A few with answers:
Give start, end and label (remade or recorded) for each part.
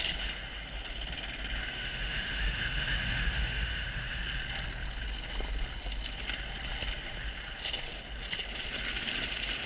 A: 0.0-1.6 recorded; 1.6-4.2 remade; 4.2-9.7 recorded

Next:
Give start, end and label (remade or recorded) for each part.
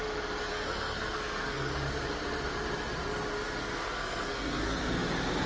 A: 0.0-0.5 recorded; 0.5-1.7 remade; 1.7-3.7 recorded; 3.7-5.0 remade; 5.0-5.5 recorded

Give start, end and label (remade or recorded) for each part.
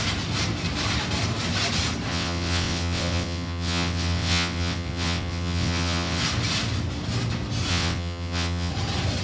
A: 0.0-2.1 recorded; 2.1-6.2 remade; 6.2-7.7 recorded; 7.7-8.7 remade; 8.7-9.2 recorded